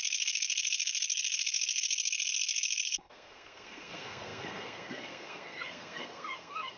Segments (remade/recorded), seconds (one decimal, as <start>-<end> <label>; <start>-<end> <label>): 0.0-6.8 remade